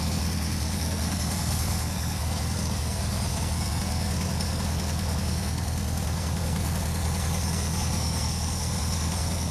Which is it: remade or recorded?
remade